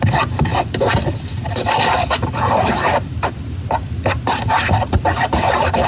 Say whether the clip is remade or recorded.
remade